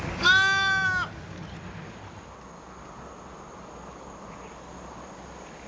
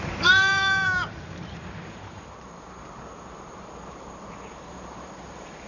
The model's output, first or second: second